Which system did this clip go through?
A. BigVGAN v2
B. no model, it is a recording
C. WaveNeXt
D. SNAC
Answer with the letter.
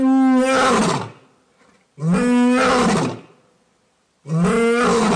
B